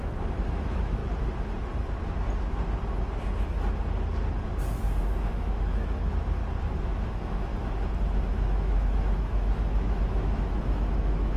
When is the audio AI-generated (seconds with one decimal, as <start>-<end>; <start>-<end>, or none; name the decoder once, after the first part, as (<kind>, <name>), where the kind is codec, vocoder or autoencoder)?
0.0-1.0 (autoencoder, DAC-VAE); 5.0-6.4; 7.1-7.5; 8.3-11.4